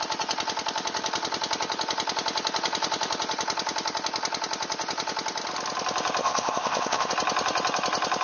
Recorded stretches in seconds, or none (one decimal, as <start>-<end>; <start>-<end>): 0.0-6.2; 7.1-8.2